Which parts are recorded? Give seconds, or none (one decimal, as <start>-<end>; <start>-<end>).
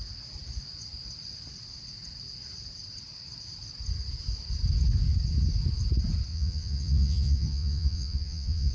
0.0-6.3